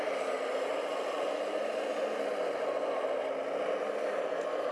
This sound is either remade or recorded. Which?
recorded